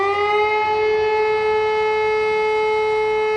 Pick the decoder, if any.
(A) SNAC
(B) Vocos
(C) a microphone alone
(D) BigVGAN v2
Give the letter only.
C